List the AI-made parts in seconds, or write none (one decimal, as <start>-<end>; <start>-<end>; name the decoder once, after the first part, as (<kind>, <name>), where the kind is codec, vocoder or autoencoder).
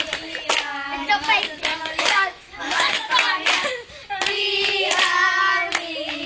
1.7-3.1 (autoencoder, DAC-VAE)